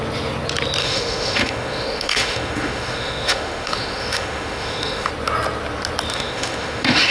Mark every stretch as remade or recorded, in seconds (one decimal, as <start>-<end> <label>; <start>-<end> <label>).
0.0-0.8 recorded; 0.8-5.1 remade; 5.1-6.1 recorded; 6.1-7.1 remade